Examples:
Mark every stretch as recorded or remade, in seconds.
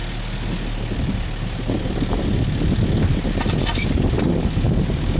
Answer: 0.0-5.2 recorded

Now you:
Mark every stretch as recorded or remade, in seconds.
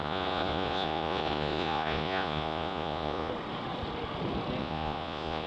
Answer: 0.0-3.3 remade; 3.3-4.6 recorded; 4.6-5.5 remade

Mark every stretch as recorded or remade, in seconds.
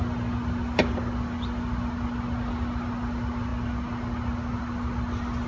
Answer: 0.0-5.5 recorded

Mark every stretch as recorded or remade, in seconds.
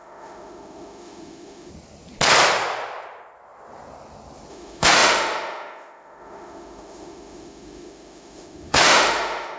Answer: 0.0-1.7 remade; 1.7-4.5 recorded; 4.5-9.6 remade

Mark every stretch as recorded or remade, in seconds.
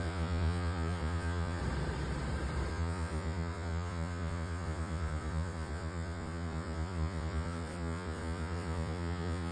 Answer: 0.0-1.6 remade; 1.6-2.7 recorded; 2.7-9.5 remade